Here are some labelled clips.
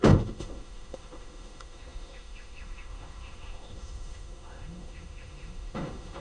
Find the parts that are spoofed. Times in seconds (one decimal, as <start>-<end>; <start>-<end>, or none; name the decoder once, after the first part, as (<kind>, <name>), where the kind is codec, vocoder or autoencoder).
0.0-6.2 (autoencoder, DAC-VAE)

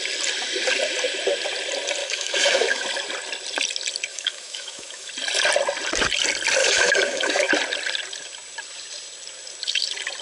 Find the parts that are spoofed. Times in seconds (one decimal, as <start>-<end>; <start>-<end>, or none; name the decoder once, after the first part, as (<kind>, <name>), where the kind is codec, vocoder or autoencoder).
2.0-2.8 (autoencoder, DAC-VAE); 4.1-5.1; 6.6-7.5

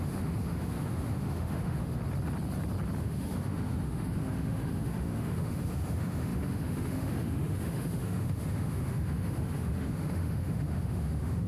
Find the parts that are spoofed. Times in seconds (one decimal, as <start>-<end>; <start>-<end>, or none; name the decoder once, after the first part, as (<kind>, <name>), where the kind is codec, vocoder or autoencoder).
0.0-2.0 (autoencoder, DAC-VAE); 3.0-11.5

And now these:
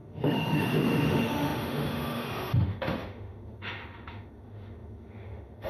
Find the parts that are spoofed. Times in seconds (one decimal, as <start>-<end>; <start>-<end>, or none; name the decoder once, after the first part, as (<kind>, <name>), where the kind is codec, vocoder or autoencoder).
0.0-5.7 (autoencoder, DAC-VAE)

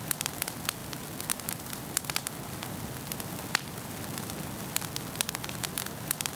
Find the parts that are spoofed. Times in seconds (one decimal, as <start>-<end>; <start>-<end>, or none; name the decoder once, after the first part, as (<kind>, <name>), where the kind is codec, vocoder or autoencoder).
none

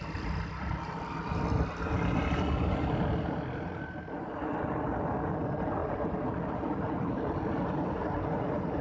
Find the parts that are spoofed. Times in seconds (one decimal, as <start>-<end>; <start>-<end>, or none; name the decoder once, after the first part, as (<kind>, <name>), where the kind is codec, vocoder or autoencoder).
none